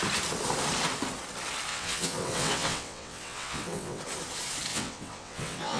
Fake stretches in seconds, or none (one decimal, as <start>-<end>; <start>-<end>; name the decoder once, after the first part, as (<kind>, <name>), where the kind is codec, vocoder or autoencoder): 1.7-4.0 (vocoder, WaveNeXt); 4.7-5.8

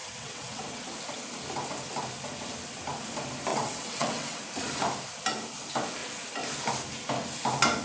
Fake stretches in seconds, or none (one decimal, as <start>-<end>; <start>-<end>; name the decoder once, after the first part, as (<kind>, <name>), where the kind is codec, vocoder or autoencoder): 0.0-0.6 (vocoder, WaveNeXt); 3.5-4.4